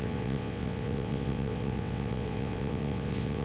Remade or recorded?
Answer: remade